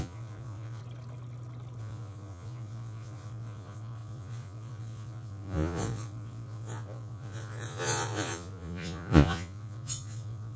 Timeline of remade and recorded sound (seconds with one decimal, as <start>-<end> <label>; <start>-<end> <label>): 0.0-0.8 remade; 0.8-1.8 recorded; 1.8-10.6 remade